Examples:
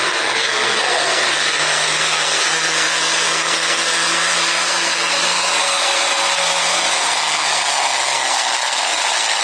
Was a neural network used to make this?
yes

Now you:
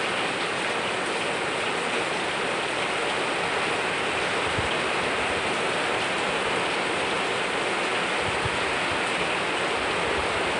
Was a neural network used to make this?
no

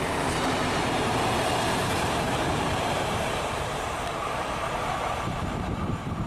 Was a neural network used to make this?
yes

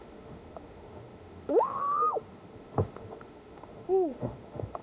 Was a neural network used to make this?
yes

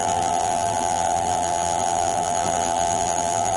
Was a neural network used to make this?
yes